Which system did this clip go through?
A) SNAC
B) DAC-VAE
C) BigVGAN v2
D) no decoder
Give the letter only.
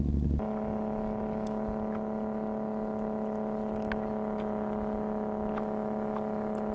D